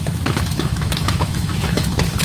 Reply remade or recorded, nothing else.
remade